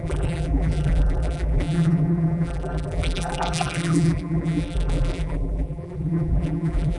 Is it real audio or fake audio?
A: fake